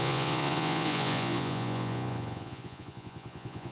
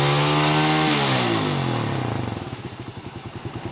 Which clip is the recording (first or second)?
second